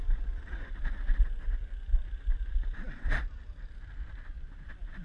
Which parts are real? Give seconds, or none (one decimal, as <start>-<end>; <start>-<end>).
0.7-1.1; 4.1-5.0